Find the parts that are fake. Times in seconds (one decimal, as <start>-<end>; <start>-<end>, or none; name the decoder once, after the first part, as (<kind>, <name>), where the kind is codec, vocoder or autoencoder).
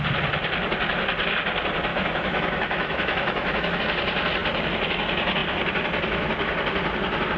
1.9-3.8 (autoencoder, DAC-VAE)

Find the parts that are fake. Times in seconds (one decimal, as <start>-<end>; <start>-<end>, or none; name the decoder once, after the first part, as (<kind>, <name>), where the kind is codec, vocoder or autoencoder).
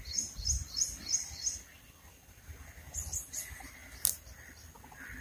none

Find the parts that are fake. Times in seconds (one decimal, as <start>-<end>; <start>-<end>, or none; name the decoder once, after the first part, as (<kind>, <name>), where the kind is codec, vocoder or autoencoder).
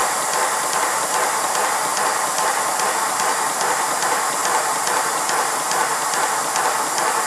none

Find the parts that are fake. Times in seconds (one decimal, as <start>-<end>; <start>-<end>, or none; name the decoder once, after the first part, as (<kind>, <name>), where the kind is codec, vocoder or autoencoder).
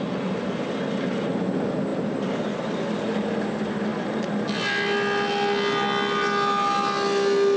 none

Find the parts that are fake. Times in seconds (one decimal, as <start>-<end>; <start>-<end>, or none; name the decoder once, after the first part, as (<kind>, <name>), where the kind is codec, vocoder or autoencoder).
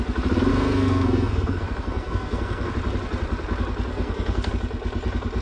0.5-2.7 (codec, SNAC); 3.9-4.5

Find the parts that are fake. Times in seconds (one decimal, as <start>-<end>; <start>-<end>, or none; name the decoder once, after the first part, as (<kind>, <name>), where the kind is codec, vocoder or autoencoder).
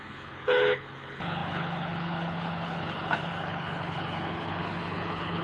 0.0-5.4 (codec, HILCodec)